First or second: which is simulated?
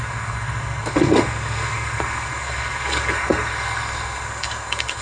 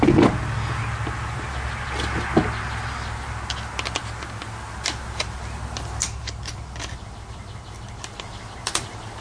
first